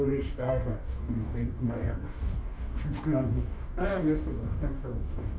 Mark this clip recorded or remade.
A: remade